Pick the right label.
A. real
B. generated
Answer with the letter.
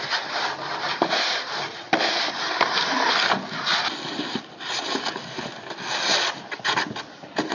A